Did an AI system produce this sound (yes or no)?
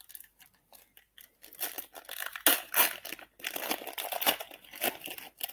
no